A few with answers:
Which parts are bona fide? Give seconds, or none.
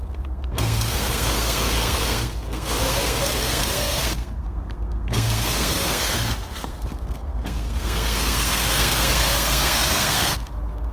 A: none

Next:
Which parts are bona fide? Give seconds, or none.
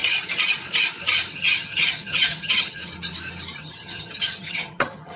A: 0.0-1.3; 2.8-3.6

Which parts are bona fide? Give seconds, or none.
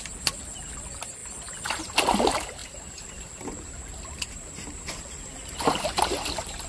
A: 0.0-2.6; 5.0-6.7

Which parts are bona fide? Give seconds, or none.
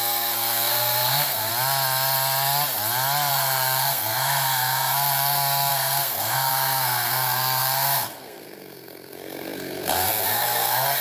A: 1.5-3.3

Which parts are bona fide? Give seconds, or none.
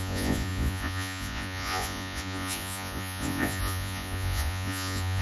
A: none